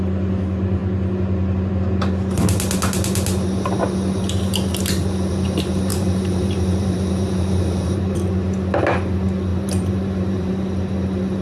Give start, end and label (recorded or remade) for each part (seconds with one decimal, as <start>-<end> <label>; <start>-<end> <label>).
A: 0.0-5.9 recorded; 5.9-8.4 remade; 8.4-9.5 recorded; 9.5-10.5 remade; 10.5-11.4 recorded